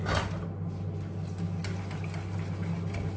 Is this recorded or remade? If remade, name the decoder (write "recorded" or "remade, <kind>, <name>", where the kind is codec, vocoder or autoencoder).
recorded